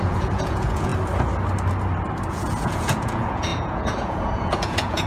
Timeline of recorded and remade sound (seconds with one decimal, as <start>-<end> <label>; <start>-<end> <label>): 0.0-0.9 remade; 0.9-2.3 recorded; 2.3-5.1 remade